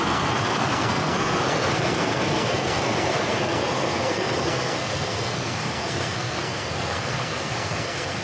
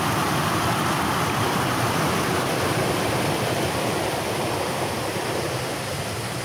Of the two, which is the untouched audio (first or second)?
second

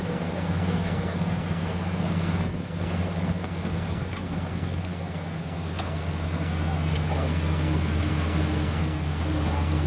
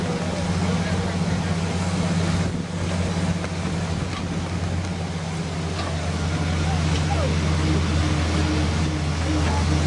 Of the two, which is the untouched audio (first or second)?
second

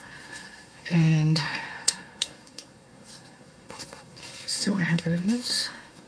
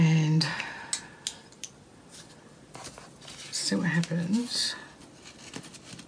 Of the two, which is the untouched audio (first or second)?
second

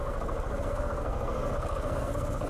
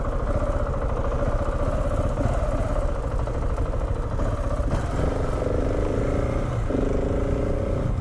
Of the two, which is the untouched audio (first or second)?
second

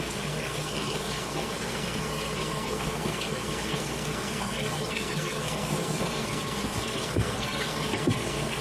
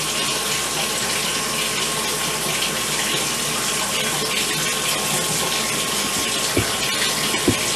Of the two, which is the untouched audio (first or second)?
second